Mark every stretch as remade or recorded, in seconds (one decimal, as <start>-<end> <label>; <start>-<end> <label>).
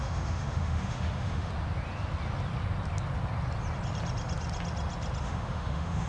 0.0-1.5 remade; 1.5-5.2 recorded; 5.2-6.1 remade